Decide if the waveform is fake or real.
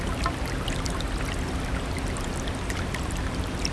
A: real